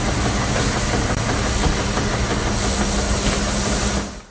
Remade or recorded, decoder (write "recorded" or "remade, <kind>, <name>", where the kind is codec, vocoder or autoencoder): recorded